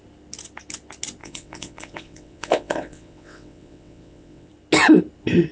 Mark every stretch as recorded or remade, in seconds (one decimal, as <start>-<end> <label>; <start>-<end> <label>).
0.0-1.2 recorded; 1.2-4.5 remade; 4.5-5.5 recorded